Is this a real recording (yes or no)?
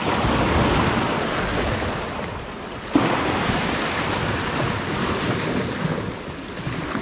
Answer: yes